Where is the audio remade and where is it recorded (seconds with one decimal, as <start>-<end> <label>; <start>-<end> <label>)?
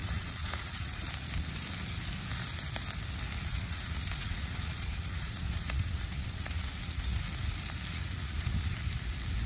0.0-1.1 remade; 1.1-3.5 recorded; 3.5-7.2 remade; 7.2-7.9 recorded; 7.9-8.7 remade; 8.7-9.5 recorded